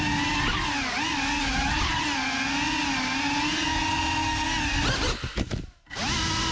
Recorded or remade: recorded